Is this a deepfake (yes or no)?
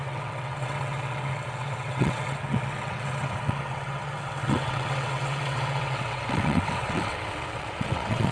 yes